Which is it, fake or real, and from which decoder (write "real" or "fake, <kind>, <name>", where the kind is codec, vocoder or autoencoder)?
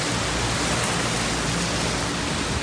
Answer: real